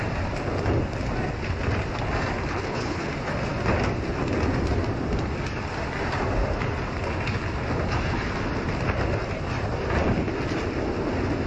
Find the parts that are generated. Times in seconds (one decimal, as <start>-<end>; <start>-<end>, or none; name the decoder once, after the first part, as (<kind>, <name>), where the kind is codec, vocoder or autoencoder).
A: 2.5-3.1 (codec, HILCodec)